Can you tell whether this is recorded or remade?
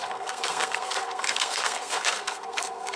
remade